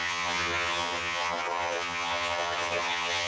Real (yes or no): no